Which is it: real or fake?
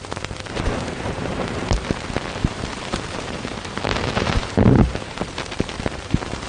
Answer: fake